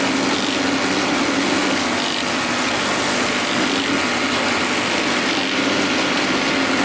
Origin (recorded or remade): recorded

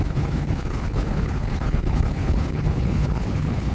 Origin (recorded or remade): remade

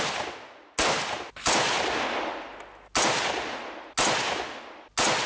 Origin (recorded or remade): recorded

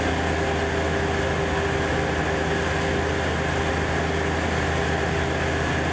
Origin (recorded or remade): recorded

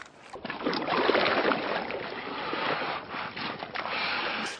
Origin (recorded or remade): recorded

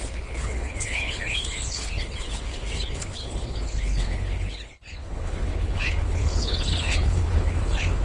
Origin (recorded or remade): remade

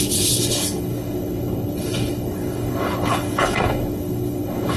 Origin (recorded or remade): remade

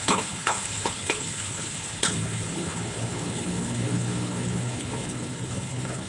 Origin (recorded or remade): remade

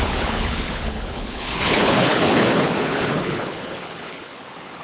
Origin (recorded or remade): remade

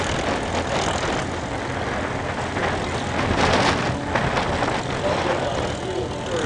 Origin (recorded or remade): recorded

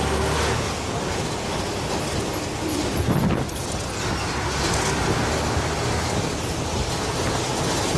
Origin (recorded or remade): recorded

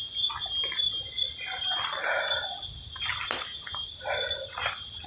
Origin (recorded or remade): recorded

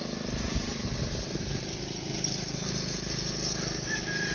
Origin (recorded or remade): recorded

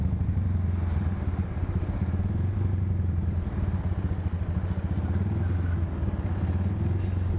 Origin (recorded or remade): recorded